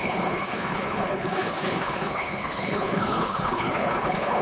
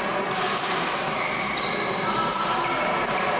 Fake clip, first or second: first